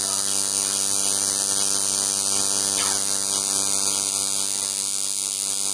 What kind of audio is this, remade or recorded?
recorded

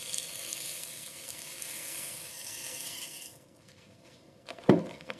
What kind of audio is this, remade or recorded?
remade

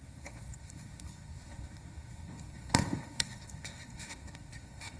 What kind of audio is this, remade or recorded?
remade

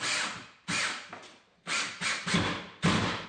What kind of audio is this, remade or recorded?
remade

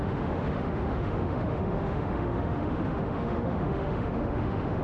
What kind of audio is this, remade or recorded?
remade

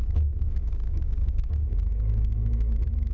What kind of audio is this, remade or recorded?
remade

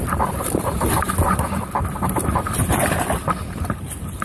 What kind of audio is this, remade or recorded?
recorded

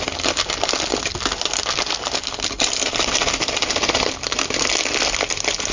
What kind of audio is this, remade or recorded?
recorded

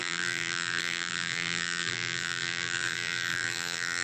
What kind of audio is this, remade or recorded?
remade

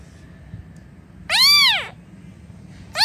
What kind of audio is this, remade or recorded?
recorded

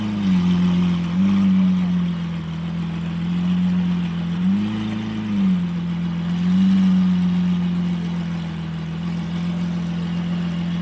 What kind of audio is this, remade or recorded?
recorded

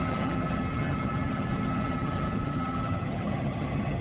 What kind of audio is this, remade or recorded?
remade